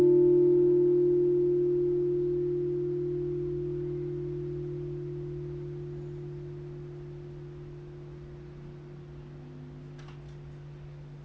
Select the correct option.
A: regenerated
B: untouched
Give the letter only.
B